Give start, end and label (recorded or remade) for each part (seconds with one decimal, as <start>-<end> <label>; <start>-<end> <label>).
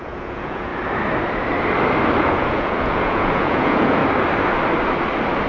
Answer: 0.0-0.7 remade; 0.7-2.2 recorded; 2.2-4.0 remade; 4.0-5.5 recorded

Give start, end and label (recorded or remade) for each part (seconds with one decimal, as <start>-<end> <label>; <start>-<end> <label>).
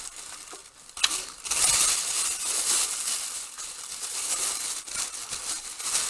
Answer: 0.0-6.1 recorded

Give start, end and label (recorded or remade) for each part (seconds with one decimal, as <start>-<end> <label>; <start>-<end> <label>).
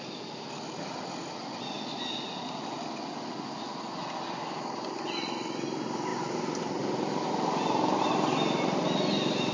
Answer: 0.0-9.5 recorded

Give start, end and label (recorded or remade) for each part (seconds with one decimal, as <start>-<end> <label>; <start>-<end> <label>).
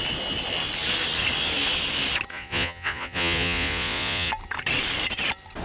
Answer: 0.0-2.3 recorded; 2.3-4.3 remade; 4.3-5.6 recorded